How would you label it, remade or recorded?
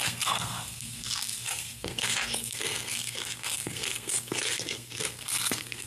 remade